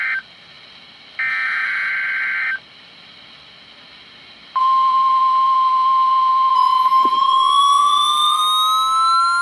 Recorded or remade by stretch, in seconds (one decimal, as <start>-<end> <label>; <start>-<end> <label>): 0.0-1.3 recorded; 1.3-1.9 remade; 1.9-4.6 recorded; 4.6-8.4 remade; 8.4-9.4 recorded